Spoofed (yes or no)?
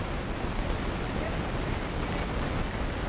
no